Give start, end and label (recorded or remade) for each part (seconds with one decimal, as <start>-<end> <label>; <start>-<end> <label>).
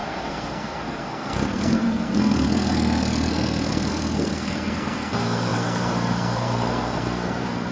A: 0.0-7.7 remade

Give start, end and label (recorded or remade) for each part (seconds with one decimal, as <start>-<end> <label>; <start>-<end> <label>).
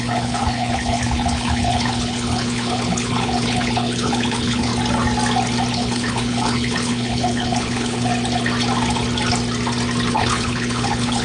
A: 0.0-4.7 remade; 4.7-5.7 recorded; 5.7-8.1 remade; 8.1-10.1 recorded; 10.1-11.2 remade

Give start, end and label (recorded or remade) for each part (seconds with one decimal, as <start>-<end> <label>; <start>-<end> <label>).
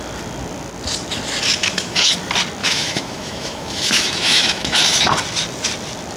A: 0.0-1.6 recorded; 1.6-2.1 remade; 2.1-2.6 recorded; 2.6-5.0 remade; 5.0-6.2 recorded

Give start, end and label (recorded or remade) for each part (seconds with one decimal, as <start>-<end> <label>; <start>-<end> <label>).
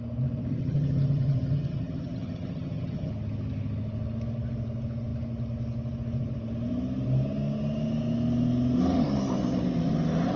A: 0.0-0.5 recorded; 0.5-3.1 remade; 3.1-10.4 recorded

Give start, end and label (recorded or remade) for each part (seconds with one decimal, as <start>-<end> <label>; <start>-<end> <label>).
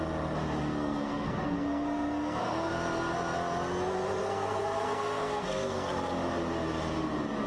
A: 0.0-0.6 recorded; 0.6-2.7 remade; 2.7-4.2 recorded; 4.2-5.9 remade; 5.9-7.5 recorded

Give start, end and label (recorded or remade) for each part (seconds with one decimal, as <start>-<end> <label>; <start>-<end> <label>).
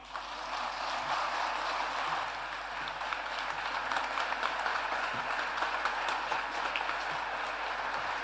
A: 0.0-4.7 recorded; 4.7-6.7 remade; 6.7-8.2 recorded